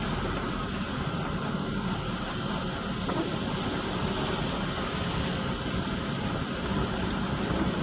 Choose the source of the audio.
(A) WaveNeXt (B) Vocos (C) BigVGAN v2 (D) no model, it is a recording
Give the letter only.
C